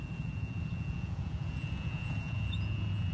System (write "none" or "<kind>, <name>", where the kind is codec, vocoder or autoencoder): vocoder, Vocos